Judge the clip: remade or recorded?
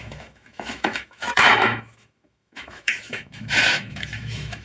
remade